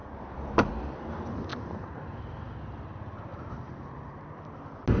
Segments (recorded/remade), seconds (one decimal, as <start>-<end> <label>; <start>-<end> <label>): 0.0-3.3 recorded; 3.3-4.2 remade; 4.2-5.0 recorded